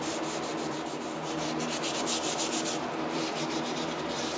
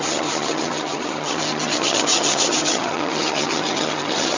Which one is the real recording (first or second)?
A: first